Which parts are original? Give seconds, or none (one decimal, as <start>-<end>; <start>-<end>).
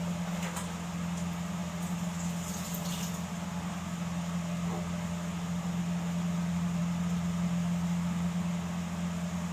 0.0-9.5